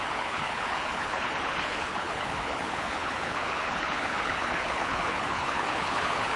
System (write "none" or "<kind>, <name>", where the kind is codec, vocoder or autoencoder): codec, HILCodec